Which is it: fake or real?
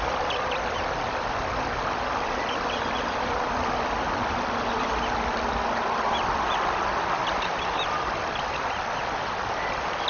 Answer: real